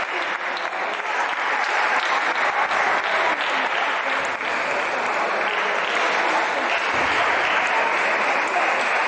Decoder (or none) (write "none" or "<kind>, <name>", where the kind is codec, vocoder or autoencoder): none